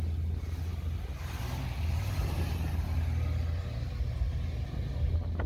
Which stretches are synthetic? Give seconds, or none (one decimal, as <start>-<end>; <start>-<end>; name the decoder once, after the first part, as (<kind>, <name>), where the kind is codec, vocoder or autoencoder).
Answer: none